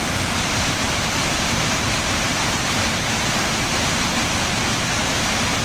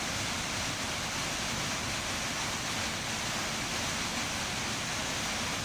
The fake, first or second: first